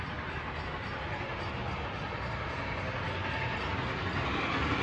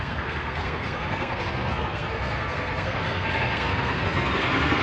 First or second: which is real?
first